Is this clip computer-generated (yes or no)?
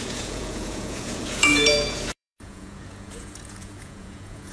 yes